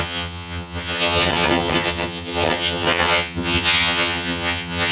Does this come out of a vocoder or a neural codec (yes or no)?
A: yes